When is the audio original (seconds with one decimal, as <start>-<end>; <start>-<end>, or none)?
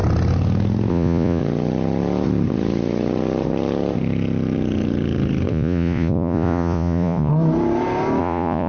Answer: 0.0-0.9; 1.4-5.5; 7.3-8.2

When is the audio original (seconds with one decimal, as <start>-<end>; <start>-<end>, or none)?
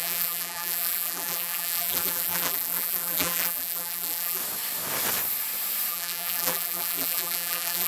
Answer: 4.4-5.9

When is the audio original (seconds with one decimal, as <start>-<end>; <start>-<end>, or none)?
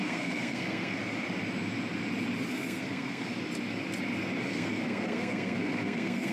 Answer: 1.0-2.5; 3.3-4.4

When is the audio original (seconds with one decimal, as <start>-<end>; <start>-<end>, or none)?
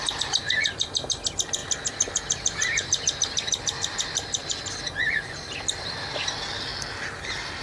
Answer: 0.0-7.6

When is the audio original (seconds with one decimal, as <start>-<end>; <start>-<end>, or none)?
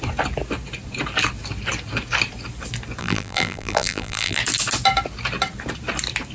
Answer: 0.0-3.0; 4.4-6.3